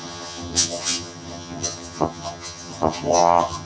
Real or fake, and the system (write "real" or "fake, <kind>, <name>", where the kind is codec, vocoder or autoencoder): fake, vocoder, HiFi-GAN